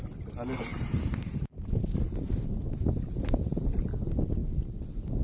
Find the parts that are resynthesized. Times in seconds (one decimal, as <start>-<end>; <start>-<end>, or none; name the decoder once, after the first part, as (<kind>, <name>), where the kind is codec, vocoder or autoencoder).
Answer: 0.7-3.8 (vocoder, BigVGAN v2)

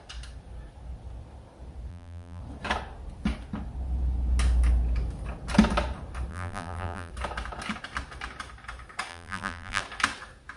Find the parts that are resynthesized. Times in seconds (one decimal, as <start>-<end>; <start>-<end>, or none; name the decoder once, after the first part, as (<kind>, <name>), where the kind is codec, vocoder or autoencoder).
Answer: 1.9-2.4 (vocoder, BigVGAN v2); 6.3-7.1; 9.1-9.8

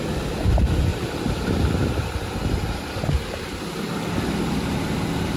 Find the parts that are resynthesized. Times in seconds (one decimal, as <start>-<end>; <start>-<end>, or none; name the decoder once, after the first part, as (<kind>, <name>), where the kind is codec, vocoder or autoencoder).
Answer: 0.9-4.1 (vocoder, BigVGAN v2)

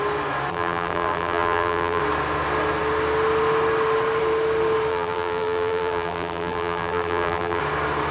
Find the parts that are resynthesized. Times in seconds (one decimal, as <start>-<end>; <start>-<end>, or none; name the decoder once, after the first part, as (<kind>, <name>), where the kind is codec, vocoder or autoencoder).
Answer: 0.5-2.0 (vocoder, BigVGAN v2); 4.9-7.6